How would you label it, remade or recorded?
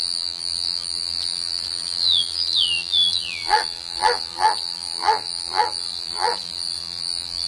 remade